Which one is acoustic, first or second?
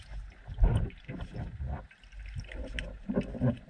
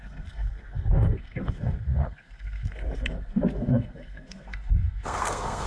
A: first